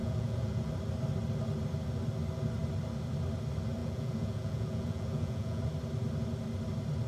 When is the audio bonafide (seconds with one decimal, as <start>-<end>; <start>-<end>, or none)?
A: 0.7-3.8; 5.6-7.1